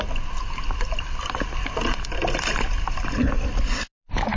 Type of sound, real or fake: real